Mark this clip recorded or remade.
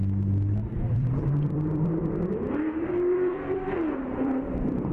remade